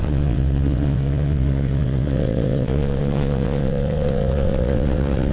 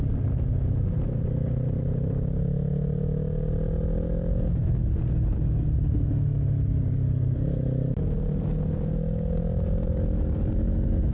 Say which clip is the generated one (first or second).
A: first